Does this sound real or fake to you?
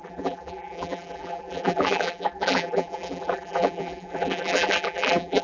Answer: fake